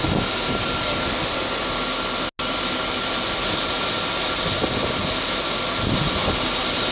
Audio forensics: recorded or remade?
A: recorded